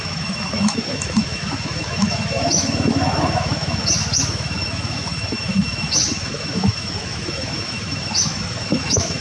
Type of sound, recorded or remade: remade